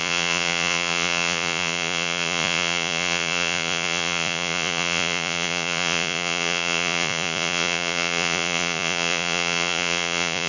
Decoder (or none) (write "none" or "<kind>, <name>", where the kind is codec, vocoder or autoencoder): vocoder, Vocos